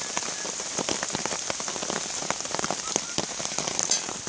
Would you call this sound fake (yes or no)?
yes